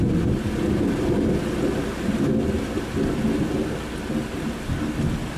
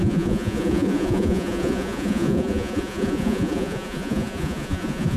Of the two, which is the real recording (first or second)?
first